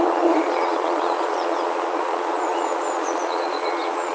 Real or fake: fake